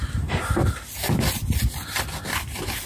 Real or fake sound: real